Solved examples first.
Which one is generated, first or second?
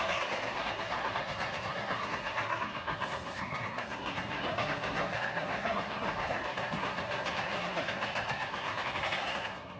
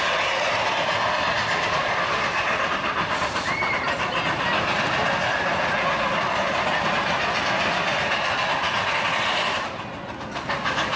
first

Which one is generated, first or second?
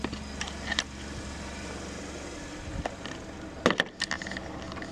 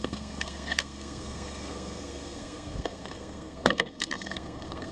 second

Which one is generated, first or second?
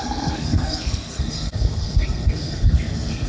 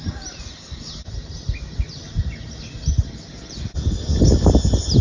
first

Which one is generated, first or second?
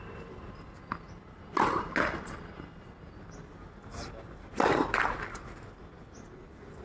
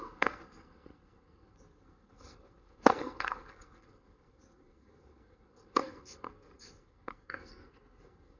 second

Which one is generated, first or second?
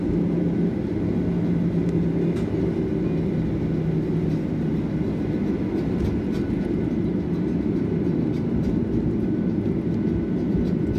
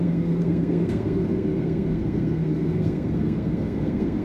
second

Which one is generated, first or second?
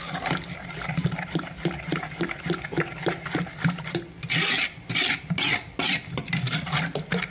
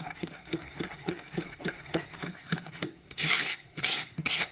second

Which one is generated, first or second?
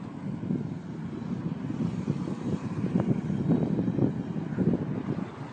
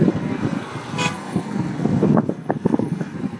second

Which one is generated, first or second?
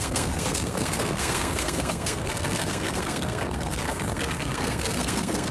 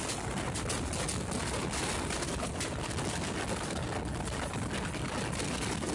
first